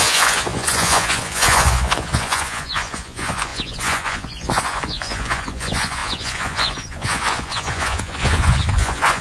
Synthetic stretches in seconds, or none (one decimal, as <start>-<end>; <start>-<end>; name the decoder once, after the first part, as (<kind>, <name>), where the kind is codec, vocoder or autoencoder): 0.0-9.2 (vocoder, Vocos)